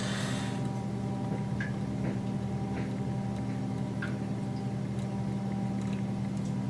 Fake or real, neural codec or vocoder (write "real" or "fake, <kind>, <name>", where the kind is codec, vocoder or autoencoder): real